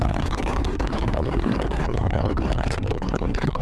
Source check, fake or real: fake